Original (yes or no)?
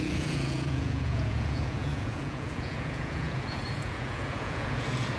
no